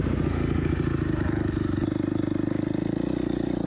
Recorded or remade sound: recorded